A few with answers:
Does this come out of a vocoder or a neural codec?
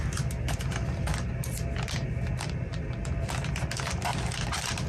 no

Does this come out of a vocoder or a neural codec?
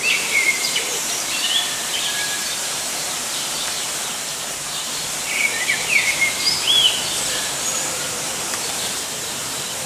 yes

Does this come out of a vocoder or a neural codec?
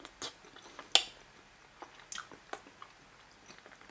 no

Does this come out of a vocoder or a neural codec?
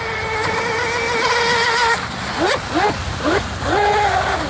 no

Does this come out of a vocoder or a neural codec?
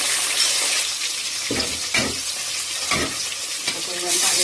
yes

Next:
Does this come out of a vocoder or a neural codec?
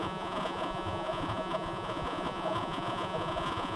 yes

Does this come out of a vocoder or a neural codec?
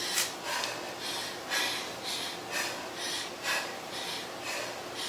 no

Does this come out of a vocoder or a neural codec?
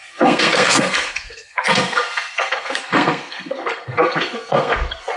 yes